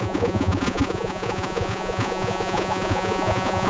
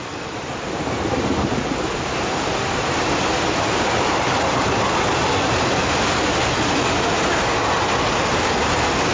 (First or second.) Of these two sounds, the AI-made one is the first